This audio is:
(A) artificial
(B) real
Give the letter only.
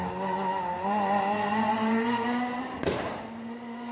B